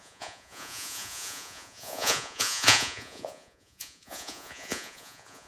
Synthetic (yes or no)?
yes